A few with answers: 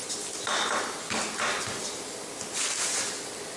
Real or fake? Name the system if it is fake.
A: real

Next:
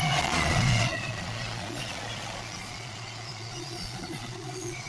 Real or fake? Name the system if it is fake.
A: fake, vocoder, Vocos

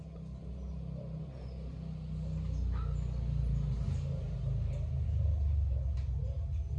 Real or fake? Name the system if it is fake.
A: real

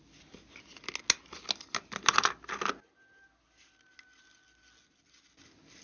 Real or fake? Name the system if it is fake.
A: real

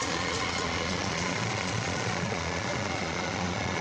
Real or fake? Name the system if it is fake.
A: fake, vocoder, Vocos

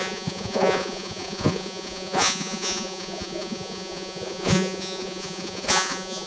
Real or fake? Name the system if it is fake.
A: fake, vocoder, Vocos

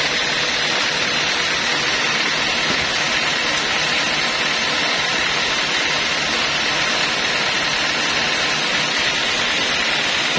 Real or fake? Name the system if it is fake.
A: real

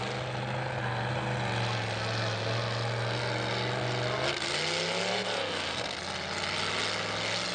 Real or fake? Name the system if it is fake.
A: real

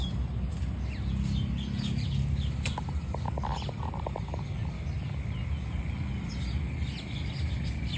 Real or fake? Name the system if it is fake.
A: real